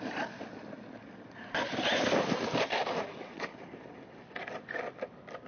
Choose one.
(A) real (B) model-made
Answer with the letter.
A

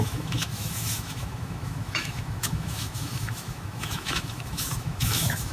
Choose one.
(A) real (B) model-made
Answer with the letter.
B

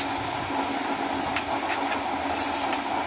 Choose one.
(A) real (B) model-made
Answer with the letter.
A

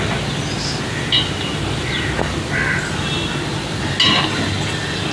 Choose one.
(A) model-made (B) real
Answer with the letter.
B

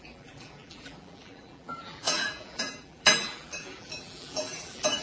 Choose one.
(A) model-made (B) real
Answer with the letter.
A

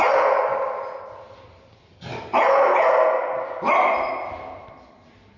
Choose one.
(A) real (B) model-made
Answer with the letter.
A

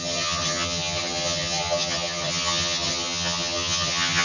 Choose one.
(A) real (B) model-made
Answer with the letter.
B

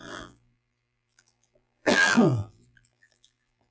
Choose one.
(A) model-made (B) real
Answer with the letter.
A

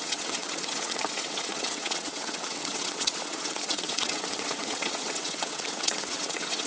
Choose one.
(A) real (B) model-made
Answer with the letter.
B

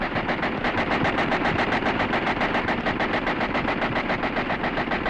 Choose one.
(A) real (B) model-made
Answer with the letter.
B